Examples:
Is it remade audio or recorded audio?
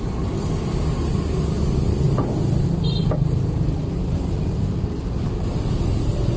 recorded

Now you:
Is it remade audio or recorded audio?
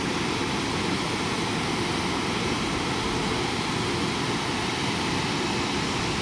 recorded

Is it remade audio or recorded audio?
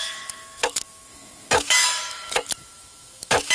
remade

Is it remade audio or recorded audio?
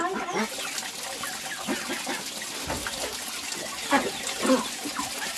recorded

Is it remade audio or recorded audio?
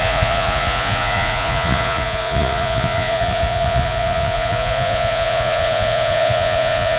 remade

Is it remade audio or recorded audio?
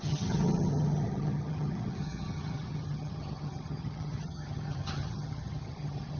remade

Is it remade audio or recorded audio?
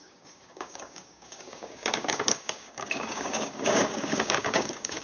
remade